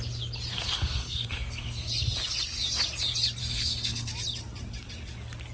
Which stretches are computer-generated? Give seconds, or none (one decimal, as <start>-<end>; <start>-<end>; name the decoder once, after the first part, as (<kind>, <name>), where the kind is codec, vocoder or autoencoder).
0.5-1.9 (codec, SNAC); 3.4-4.1